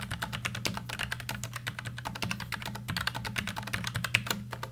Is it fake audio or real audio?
real